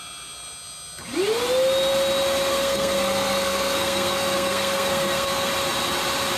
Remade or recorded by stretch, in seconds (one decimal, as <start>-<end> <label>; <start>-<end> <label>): 0.0-2.5 recorded; 2.5-5.5 remade; 5.5-6.4 recorded